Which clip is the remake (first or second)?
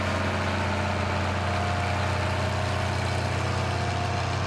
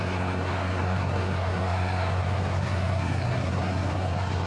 second